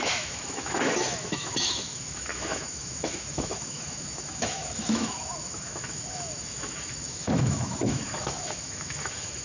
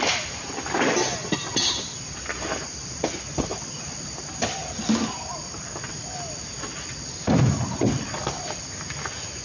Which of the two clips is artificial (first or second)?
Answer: first